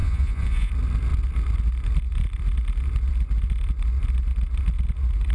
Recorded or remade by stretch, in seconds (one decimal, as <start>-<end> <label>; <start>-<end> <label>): 0.0-0.7 remade; 0.7-5.3 recorded

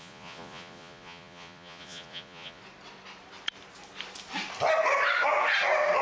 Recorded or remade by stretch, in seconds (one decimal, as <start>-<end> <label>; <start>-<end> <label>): 0.0-2.6 remade; 2.6-6.0 recorded

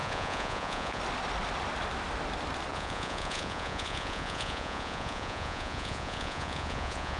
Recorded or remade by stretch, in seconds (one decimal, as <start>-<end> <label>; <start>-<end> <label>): 0.0-1.0 remade; 1.0-2.7 recorded; 2.7-7.2 remade

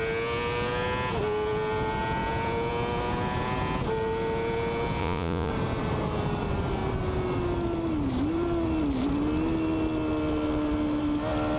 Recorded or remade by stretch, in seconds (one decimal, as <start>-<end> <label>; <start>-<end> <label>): 0.0-5.0 recorded; 5.0-5.5 remade; 5.5-11.6 recorded

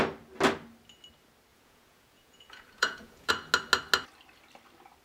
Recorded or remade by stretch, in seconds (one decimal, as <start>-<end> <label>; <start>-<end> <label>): 0.0-1.5 recorded; 1.5-3.3 remade; 3.3-5.0 recorded

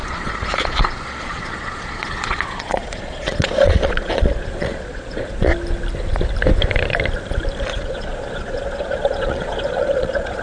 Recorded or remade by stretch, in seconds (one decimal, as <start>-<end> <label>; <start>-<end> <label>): 0.0-5.5 remade; 5.5-7.7 recorded; 7.7-10.4 remade

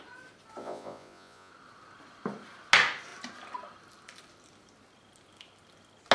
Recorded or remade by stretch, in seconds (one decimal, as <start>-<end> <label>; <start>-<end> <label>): 0.0-0.6 recorded; 0.6-1.5 remade; 1.5-6.1 recorded

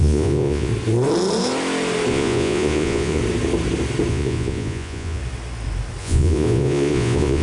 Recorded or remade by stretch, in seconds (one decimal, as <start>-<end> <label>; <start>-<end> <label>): 0.0-0.7 remade; 0.7-2.1 recorded; 2.1-3.2 remade; 3.2-4.1 recorded; 4.1-5.2 remade; 5.2-6.0 recorded; 6.0-7.4 remade